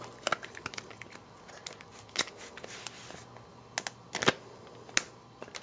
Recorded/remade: recorded